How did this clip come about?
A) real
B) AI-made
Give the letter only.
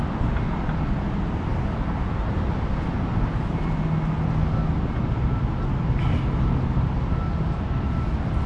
A